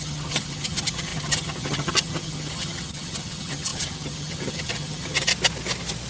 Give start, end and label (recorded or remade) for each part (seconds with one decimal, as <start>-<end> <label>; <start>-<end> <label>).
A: 0.0-5.3 remade; 5.3-6.1 recorded